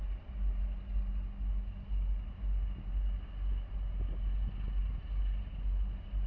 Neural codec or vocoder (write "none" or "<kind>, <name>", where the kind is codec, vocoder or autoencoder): none